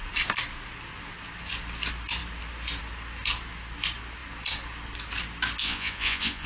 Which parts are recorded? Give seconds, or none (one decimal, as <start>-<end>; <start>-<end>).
0.0-5.6